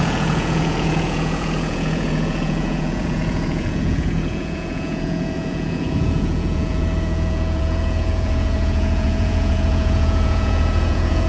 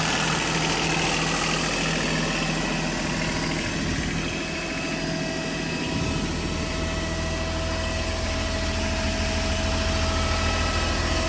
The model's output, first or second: first